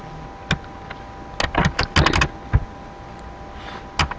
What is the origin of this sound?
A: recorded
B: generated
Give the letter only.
A